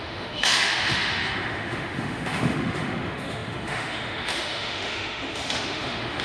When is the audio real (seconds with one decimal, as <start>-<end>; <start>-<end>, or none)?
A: none